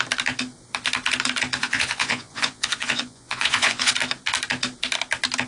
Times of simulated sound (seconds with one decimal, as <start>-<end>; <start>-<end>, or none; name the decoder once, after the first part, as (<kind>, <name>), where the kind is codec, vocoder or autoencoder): 1.6-3.9 (vocoder, Vocos)